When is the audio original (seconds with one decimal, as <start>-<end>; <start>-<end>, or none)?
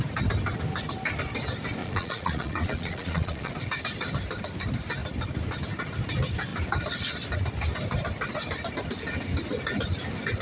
0.0-1.8; 3.5-10.4